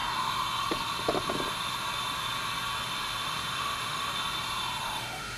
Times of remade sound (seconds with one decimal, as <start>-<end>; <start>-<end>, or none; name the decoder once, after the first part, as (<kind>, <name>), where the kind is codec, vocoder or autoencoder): 3.2-4.1 (autoencoder, DAC-VAE); 4.8-5.4